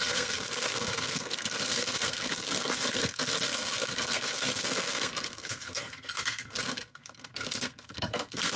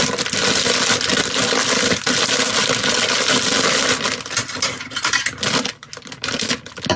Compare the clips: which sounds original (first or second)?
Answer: second